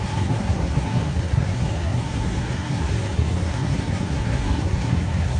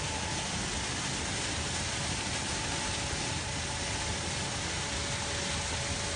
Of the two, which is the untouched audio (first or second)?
second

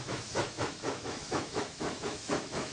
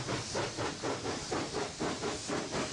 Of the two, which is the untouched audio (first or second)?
second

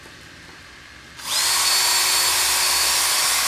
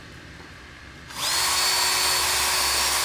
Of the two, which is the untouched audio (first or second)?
second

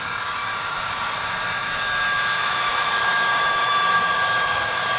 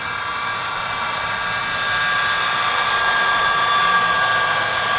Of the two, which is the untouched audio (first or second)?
second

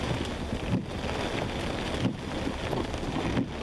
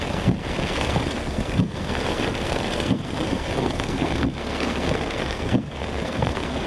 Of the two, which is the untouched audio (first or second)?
first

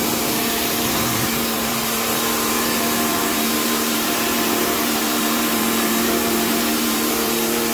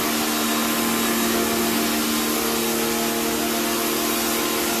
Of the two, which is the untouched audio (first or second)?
second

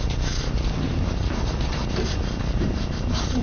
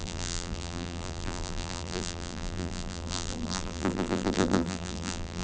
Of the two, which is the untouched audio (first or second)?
first